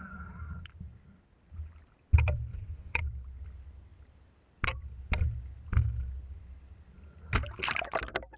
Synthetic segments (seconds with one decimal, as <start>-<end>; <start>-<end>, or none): 2.5-3.0